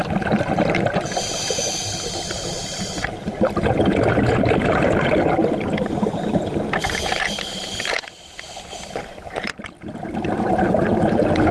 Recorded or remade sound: recorded